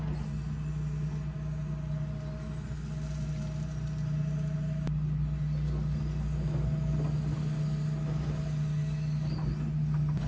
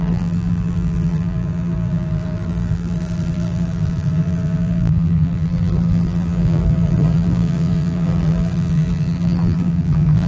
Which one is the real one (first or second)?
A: first